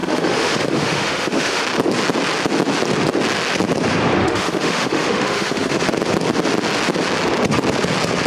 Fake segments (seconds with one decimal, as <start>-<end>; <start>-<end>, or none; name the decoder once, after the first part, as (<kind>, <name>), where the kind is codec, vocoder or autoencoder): 0.0-1.6 (autoencoder, DAC-VAE); 4.2-5.8